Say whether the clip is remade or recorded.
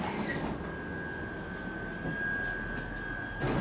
recorded